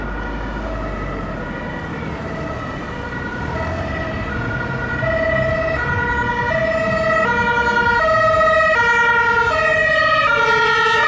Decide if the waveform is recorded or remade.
recorded